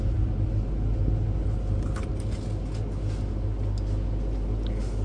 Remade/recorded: recorded